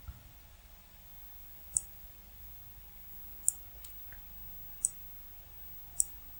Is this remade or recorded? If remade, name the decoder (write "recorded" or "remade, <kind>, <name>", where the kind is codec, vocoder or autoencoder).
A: recorded